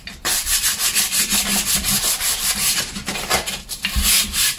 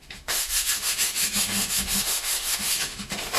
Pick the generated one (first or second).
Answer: second